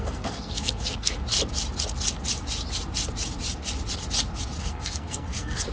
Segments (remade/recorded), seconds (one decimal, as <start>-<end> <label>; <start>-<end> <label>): 0.0-1.2 remade; 1.2-4.6 recorded; 4.6-5.7 remade